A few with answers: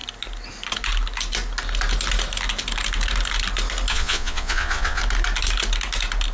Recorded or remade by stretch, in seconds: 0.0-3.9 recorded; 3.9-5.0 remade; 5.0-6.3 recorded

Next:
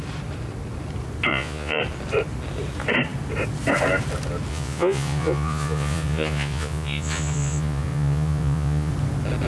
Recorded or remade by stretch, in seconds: 0.0-1.3 recorded; 1.3-1.8 remade; 1.8-4.5 recorded; 4.5-8.9 remade; 8.9-9.5 recorded

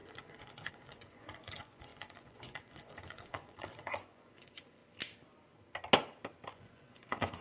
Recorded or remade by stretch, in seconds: 0.0-4.8 remade; 4.8-6.5 recorded; 6.5-7.4 remade

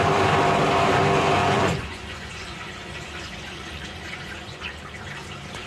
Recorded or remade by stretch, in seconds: 0.0-1.4 recorded; 1.4-4.8 remade; 4.8-5.7 recorded

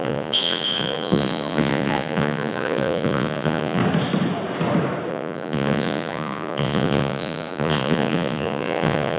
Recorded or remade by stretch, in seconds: 0.0-3.8 remade; 3.8-5.1 recorded; 5.1-9.2 remade

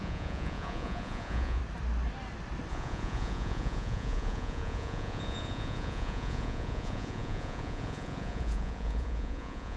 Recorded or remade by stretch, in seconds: 0.0-1.6 remade; 1.6-2.7 recorded; 2.7-9.8 remade